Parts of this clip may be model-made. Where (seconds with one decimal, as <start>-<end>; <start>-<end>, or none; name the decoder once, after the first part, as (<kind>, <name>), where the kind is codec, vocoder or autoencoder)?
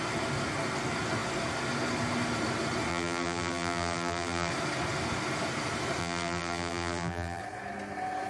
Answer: 2.9-4.5 (vocoder, BigVGAN v2); 6.0-7.4